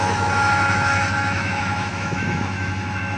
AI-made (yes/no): yes